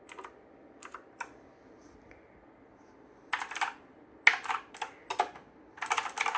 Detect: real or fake real